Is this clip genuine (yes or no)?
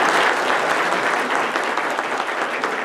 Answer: yes